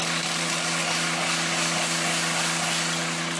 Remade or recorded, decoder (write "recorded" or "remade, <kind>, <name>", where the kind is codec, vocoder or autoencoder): recorded